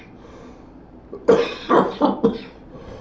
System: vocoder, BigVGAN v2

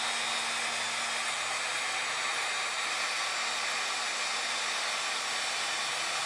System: none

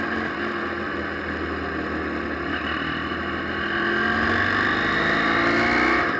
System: none